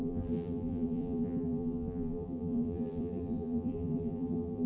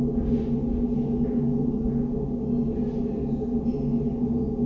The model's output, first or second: first